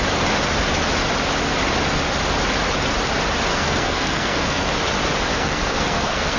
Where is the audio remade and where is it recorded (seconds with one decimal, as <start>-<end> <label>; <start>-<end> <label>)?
0.0-3.5 recorded; 3.5-4.7 remade; 4.7-5.3 recorded; 5.3-6.4 remade